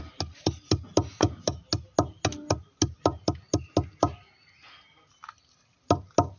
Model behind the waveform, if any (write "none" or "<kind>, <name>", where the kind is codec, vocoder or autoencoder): none